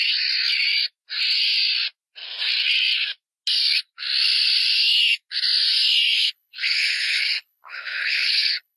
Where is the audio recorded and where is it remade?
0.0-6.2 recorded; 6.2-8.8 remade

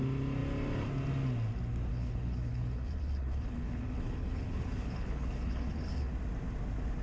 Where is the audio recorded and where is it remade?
0.0-1.9 recorded; 1.9-6.1 remade; 6.1-7.0 recorded

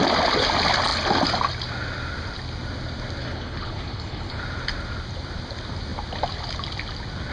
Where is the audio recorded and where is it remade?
0.0-3.2 recorded; 3.2-4.4 remade; 4.4-7.3 recorded

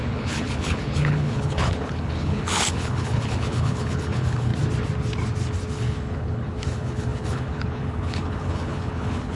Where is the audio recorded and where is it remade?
0.0-4.5 remade; 4.5-5.7 recorded; 5.7-9.3 remade